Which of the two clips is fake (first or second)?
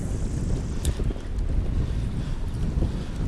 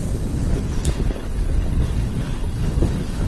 second